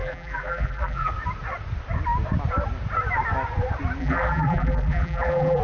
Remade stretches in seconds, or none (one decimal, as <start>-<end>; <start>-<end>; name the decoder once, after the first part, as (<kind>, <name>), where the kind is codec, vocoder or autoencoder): 0.0-1.1 (vocoder, BigVGAN v2); 4.0-5.6